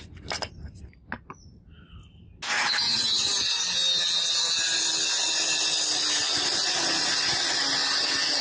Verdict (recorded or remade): recorded